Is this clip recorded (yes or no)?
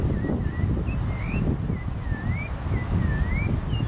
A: yes